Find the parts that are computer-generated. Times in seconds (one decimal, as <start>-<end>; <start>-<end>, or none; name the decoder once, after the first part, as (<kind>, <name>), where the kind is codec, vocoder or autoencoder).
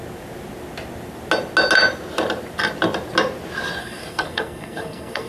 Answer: 3.8-5.3 (codec, SNAC)